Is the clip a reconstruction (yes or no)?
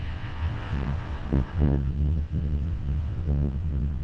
yes